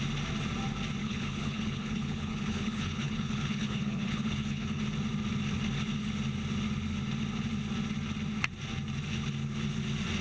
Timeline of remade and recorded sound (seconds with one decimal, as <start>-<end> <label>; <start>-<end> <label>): 0.0-1.0 recorded; 1.0-4.8 remade; 4.8-10.2 recorded